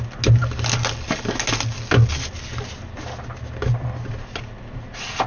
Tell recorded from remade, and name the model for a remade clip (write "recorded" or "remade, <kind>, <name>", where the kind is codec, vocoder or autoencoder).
recorded